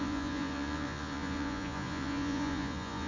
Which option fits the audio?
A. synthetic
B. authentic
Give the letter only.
A